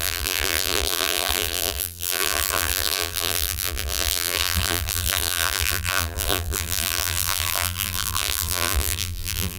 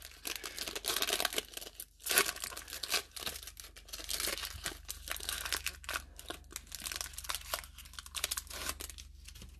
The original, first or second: second